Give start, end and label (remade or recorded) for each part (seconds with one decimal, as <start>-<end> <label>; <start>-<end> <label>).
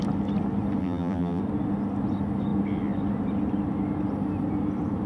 0.0-0.8 recorded; 0.8-1.4 remade; 1.4-5.1 recorded